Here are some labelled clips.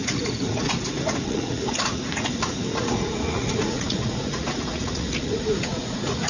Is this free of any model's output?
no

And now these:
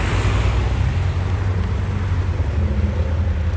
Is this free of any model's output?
yes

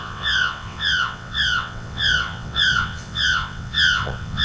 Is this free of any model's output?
no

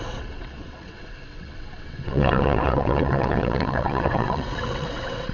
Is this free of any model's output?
no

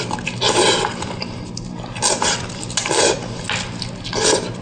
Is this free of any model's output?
yes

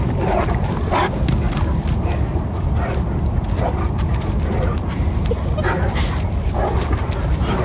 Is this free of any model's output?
yes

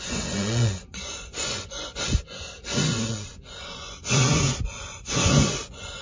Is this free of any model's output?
no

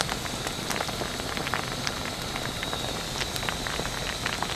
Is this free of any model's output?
yes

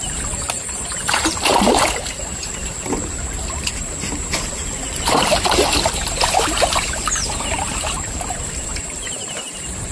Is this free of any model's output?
no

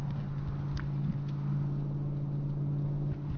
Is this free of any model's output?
yes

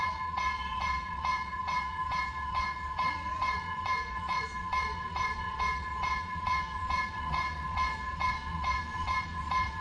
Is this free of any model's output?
no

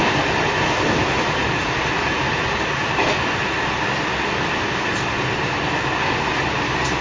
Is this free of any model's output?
yes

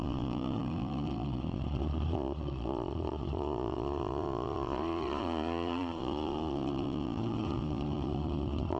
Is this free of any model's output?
no